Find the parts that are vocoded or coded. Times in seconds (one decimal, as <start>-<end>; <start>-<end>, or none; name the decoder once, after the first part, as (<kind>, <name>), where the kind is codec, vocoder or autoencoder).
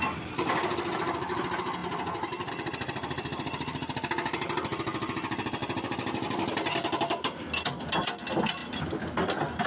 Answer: none